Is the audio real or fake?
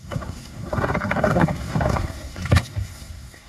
fake